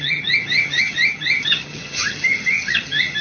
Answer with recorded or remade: remade